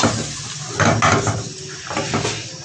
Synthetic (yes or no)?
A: no